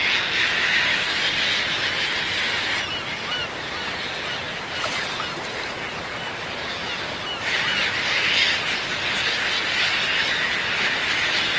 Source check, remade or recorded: recorded